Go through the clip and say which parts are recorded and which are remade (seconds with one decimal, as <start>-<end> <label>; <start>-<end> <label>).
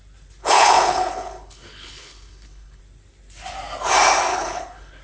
0.0-0.4 recorded; 0.4-2.8 remade; 2.8-4.3 recorded; 4.3-5.0 remade